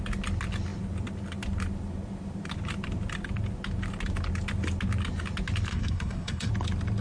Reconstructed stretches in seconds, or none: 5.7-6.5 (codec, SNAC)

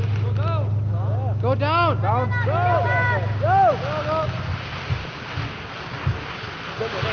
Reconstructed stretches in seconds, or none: none

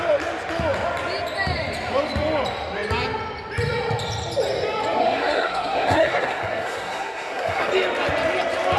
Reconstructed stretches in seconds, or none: 5.0-7.7 (codec, SNAC)